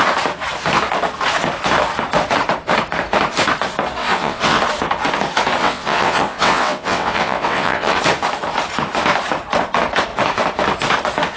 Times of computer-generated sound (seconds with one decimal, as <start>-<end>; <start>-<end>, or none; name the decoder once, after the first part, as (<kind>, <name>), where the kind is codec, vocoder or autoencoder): 4.0-4.6 (vocoder, WaveNeXt); 5.6-8.0